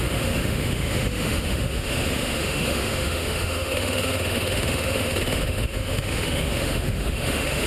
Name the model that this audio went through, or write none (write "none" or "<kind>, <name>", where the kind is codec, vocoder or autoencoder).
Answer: autoencoder, DAC-VAE